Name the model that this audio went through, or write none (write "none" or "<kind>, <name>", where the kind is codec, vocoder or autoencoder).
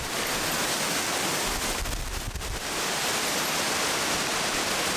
none